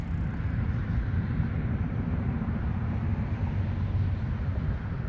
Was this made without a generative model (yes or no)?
yes